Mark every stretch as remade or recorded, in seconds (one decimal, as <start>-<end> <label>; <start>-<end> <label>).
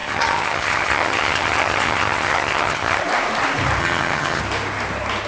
0.0-3.0 remade; 3.0-3.8 recorded; 3.8-4.4 remade; 4.4-5.3 recorded